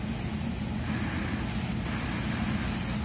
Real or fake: real